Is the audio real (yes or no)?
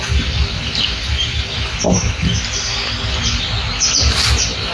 yes